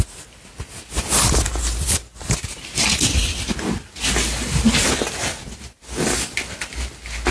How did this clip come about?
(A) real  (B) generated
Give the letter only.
A